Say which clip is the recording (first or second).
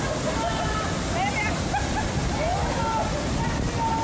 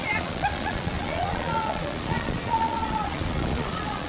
first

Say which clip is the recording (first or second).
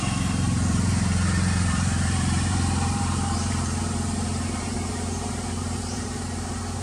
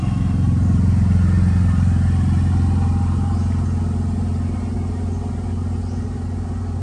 second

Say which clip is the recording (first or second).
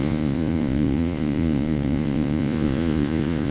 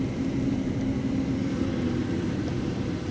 second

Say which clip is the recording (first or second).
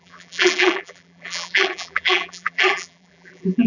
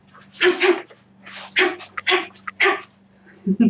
second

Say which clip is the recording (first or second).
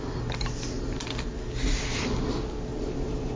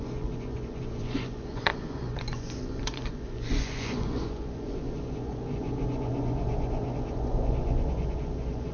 first